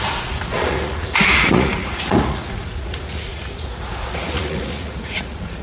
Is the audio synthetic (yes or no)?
yes